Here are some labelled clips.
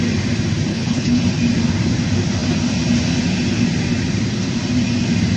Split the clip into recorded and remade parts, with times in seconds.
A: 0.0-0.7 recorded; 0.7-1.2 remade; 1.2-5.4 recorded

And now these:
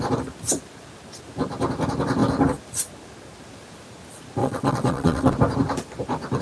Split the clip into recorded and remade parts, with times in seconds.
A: 0.0-4.4 recorded; 4.4-5.3 remade; 5.3-6.4 recorded

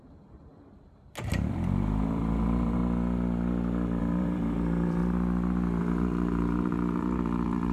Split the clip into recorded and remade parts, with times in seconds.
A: 0.0-0.5 remade; 0.5-1.5 recorded; 1.5-2.8 remade; 2.8-4.0 recorded; 4.0-5.0 remade; 5.0-5.8 recorded; 5.8-7.7 remade

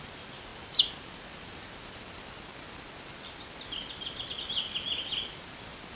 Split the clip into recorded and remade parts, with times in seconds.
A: 0.0-6.0 recorded

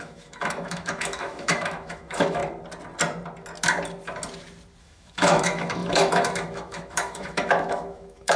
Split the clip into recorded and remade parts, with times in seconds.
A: 0.0-2.4 remade; 2.4-4.8 recorded; 4.8-8.4 remade